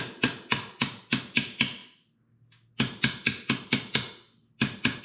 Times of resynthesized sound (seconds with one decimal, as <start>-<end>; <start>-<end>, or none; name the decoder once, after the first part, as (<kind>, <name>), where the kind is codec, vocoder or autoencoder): none